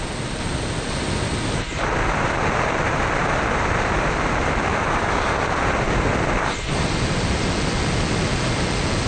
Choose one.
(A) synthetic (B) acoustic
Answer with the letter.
B